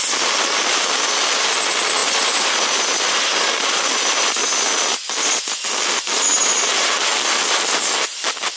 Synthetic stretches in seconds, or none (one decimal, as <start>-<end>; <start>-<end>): none